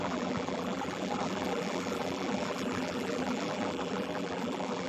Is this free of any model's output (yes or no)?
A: no